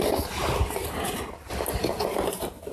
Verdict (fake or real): real